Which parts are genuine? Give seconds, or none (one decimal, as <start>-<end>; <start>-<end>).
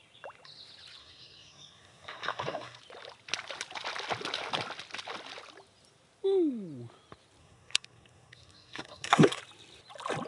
0.0-1.0; 2.8-7.4; 9.4-10.3